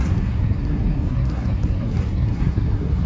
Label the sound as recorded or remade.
remade